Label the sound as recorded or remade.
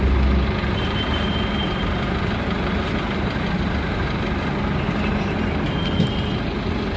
recorded